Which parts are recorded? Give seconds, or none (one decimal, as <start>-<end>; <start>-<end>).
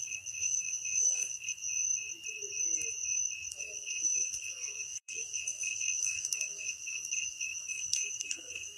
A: 1.6-3.5